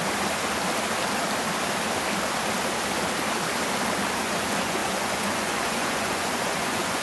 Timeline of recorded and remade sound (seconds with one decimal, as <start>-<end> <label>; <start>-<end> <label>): 0.0-4.2 recorded; 4.2-7.0 remade